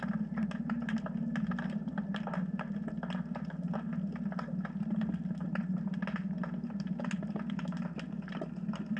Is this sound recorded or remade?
recorded